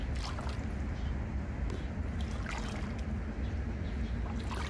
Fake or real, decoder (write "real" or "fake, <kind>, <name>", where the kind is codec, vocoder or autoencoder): real